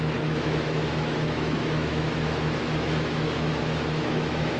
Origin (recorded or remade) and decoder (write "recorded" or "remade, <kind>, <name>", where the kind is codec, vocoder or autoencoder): remade, autoencoder, DAC-VAE